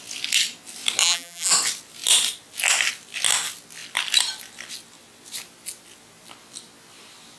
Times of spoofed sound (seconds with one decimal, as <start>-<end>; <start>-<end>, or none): 1.0-1.5